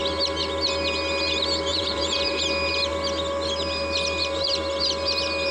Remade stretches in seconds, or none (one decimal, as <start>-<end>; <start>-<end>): 1.7-2.4